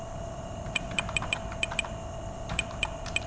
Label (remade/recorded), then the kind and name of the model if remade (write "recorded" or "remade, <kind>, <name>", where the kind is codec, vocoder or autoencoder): remade, vocoder, BigVGAN v2